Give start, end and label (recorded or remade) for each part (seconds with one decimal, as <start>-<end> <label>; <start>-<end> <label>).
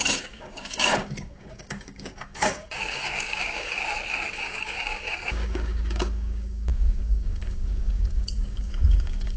0.0-3.8 remade; 3.8-4.3 recorded; 4.3-9.4 remade